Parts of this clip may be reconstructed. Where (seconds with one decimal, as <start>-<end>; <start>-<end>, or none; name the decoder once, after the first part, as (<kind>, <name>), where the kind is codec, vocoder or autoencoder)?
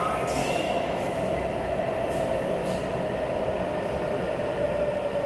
0.4-1.8 (autoencoder, DAC-VAE)